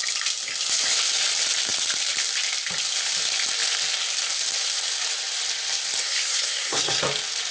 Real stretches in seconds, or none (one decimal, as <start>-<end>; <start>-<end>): 0.0-6.0; 7.0-7.5